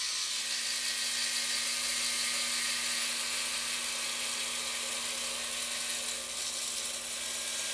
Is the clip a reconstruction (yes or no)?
no